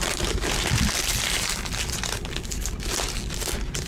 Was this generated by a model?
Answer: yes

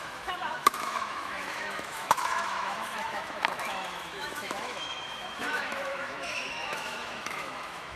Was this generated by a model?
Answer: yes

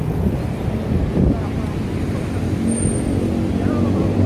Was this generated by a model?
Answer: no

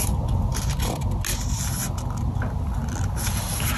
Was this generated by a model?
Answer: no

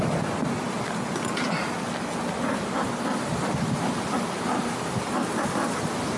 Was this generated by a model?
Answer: no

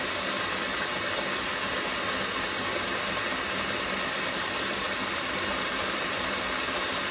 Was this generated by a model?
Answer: no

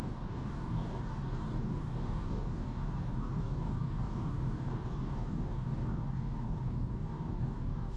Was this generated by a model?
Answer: yes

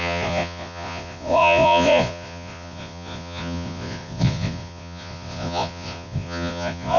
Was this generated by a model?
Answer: yes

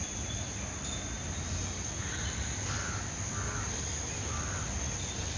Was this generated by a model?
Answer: no